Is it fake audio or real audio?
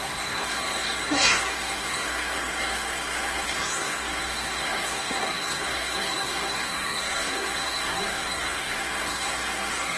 fake